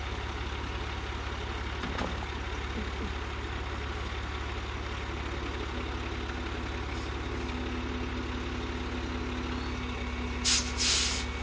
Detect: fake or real real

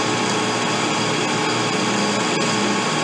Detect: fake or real real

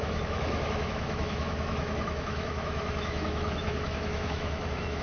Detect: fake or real fake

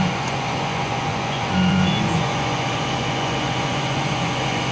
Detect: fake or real fake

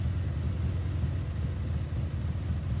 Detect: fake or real real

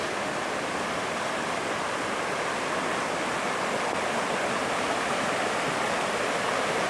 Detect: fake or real real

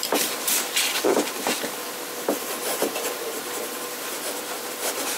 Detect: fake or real fake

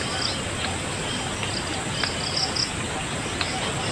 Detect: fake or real real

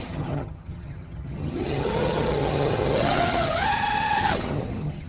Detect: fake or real fake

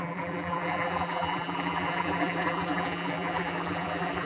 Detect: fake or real fake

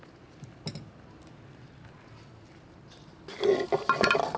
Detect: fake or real real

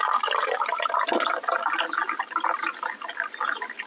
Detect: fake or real real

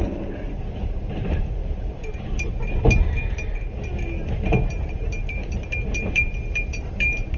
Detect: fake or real fake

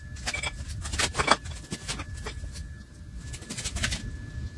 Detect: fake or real real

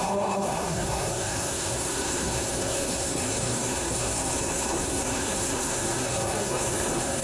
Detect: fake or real fake